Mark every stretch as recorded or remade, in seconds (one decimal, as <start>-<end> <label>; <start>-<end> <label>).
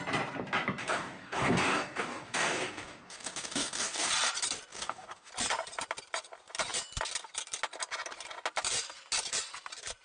0.0-0.8 recorded; 0.8-4.1 remade; 4.1-4.7 recorded; 4.7-5.3 remade; 5.3-10.0 recorded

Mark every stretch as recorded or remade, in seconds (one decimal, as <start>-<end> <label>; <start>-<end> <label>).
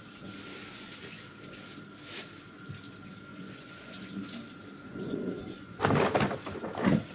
0.0-0.7 recorded; 0.7-1.2 remade; 1.2-3.3 recorded; 3.3-4.2 remade; 4.2-4.9 recorded; 4.9-5.8 remade; 5.8-7.1 recorded